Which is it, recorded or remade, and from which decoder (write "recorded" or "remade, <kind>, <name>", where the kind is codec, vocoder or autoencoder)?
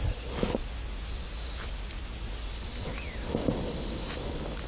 recorded